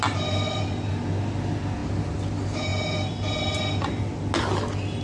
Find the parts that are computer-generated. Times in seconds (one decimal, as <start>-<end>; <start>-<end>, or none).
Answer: none